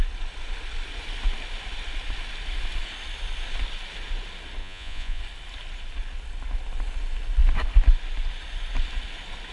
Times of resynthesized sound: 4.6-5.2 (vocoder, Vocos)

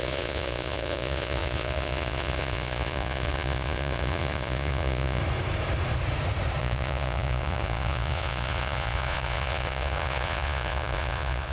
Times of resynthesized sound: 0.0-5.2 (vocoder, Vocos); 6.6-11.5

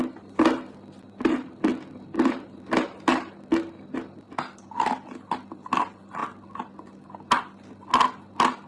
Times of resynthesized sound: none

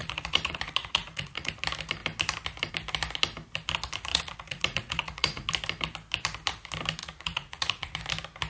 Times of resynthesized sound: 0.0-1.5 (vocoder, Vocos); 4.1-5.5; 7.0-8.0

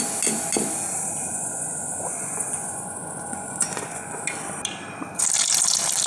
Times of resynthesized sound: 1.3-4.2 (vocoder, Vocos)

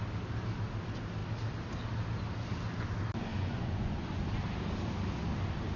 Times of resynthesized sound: 3.3-4.3 (vocoder, Vocos)